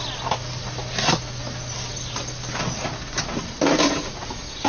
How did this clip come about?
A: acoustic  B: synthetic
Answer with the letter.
A